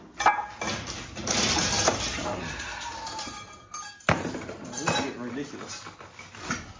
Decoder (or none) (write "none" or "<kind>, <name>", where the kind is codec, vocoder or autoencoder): none